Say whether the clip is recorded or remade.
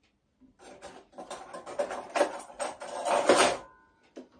recorded